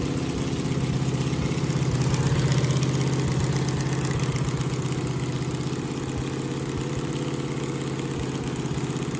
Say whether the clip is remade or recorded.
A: recorded